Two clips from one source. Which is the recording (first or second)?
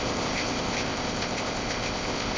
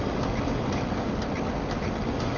second